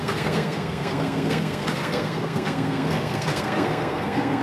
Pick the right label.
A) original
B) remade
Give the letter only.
B